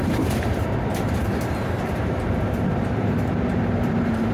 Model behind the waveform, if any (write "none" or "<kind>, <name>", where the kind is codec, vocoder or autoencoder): vocoder, BigVGAN v2